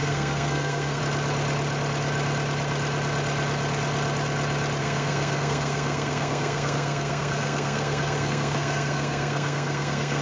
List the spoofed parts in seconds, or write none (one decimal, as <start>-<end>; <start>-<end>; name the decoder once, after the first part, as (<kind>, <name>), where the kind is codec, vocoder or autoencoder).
0.0-1.0 (codec, SNAC); 4.8-10.2